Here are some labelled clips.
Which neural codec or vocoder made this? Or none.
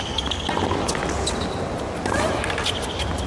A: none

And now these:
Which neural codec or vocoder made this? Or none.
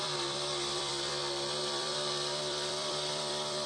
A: vocoder, BigVGAN v2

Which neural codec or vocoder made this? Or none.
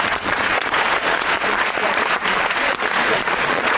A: vocoder, Vocos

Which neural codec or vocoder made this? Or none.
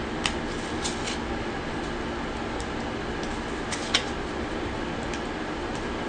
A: none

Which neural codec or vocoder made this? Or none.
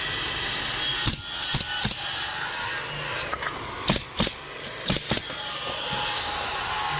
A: none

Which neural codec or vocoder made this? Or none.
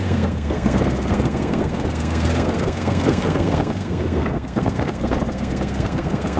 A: codec, SNAC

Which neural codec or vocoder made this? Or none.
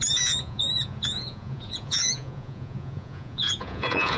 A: vocoder, Vocos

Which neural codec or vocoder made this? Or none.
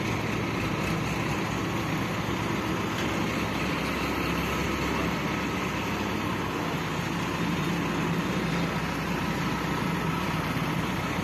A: none